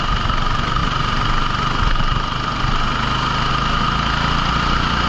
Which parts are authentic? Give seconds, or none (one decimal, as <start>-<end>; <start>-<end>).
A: 0.0-5.1